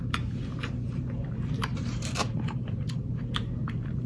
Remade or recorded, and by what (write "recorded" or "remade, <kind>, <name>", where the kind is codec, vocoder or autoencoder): remade, vocoder, BigVGAN v2